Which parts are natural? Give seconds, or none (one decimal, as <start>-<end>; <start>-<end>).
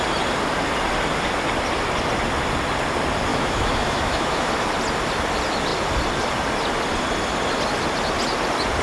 0.0-3.3; 4.5-8.8